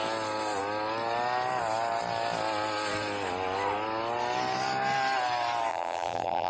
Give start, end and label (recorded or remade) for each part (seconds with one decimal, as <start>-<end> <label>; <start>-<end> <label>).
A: 0.0-5.7 recorded; 5.7-6.5 remade